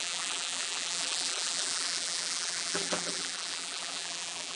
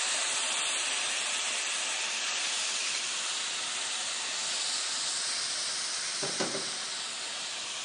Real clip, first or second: second